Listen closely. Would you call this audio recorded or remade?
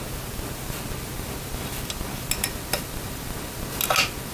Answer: recorded